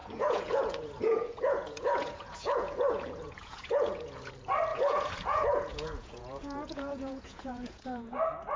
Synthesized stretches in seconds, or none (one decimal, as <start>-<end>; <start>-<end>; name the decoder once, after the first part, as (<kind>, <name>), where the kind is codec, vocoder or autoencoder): 0.0-4.3 (vocoder, Vocos); 4.7-8.1